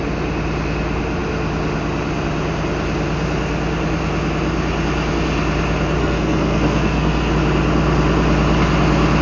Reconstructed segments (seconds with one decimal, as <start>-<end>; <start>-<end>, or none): 6.0-7.3